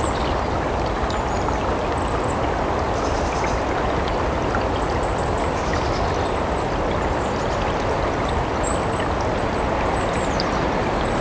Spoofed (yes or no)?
no